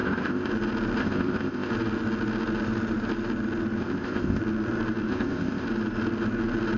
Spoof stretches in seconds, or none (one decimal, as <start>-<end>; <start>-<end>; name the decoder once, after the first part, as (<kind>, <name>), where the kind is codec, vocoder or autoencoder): 0.0-0.5 (codec, ZipCodec); 1.0-1.7; 3.8-4.4; 5.1-5.7